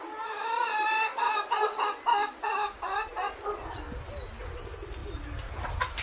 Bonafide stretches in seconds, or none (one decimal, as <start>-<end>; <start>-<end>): 0.0-6.0

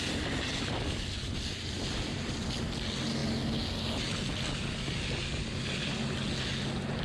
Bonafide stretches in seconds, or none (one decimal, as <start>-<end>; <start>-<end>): 0.0-7.0

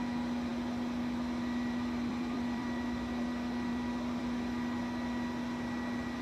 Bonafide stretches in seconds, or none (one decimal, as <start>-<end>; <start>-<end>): 0.0-0.5; 4.2-6.2

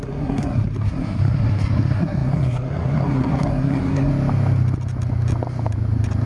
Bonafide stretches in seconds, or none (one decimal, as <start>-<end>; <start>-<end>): 4.1-6.3

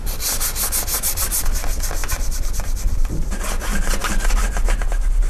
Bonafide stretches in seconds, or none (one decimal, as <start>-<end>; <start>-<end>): 0.0-2.0; 3.4-5.3